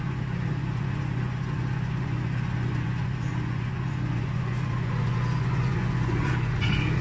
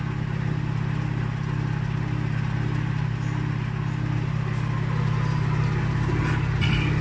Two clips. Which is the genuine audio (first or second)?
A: second